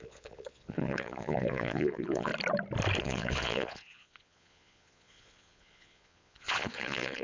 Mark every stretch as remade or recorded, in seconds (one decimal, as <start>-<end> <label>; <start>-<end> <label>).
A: 0.0-2.3 remade; 2.3-3.0 recorded; 3.0-7.2 remade